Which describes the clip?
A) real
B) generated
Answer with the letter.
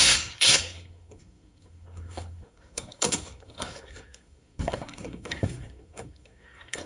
B